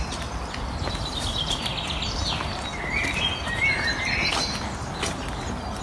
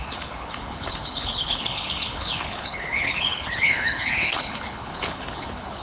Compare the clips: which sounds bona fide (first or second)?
first